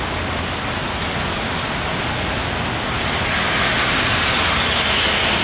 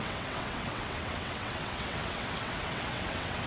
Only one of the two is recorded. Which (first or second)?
first